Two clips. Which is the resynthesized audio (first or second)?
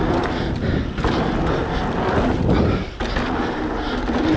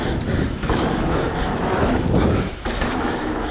second